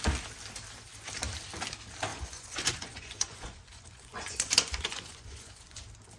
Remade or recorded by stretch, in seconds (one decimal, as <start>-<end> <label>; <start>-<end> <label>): 0.0-2.1 recorded; 2.1-5.8 remade; 5.8-6.2 recorded

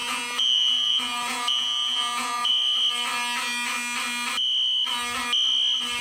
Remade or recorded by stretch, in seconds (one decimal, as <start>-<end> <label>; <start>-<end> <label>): 0.0-2.5 remade; 2.5-6.0 recorded

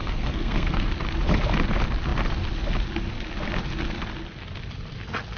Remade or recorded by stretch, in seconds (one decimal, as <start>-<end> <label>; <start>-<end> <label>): 0.0-0.9 remade; 0.9-5.4 recorded

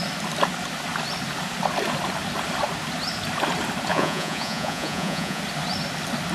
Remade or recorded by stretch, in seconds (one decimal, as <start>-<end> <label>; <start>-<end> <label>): 0.0-3.9 recorded; 3.9-5.4 remade; 5.4-6.3 recorded